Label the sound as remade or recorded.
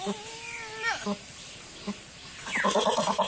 recorded